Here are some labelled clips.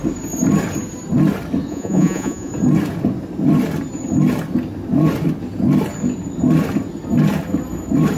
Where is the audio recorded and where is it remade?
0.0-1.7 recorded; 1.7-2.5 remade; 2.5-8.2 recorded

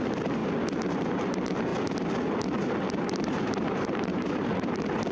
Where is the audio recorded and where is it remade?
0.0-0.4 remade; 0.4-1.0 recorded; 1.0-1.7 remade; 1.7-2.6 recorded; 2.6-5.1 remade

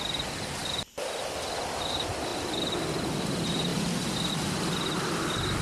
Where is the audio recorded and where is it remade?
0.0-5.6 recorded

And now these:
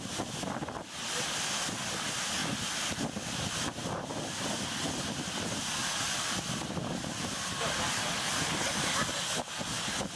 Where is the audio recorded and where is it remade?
0.0-2.4 recorded; 2.4-7.6 remade; 7.6-10.2 recorded